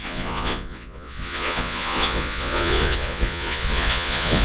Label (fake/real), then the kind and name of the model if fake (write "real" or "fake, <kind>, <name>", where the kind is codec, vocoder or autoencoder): fake, vocoder, Vocos